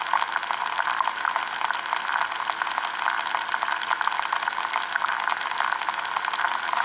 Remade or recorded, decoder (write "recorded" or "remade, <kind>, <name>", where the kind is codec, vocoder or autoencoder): recorded